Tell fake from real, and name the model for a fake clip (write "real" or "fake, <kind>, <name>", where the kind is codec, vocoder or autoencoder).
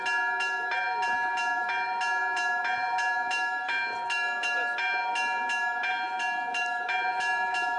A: real